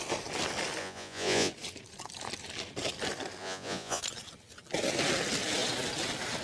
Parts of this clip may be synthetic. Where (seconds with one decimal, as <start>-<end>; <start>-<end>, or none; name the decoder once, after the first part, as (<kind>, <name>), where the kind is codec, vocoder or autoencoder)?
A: 0.8-1.5 (vocoder, Vocos); 3.4-4.0